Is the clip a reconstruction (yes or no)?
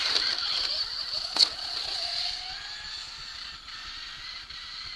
no